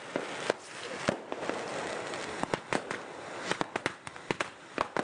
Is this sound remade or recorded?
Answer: recorded